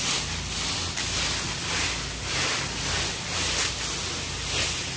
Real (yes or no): yes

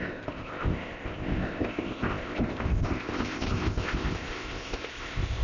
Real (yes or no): no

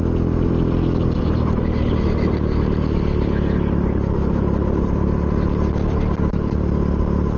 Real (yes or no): yes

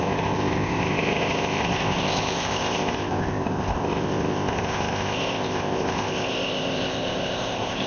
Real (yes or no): no